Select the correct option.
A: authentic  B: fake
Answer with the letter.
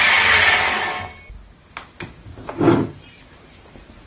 A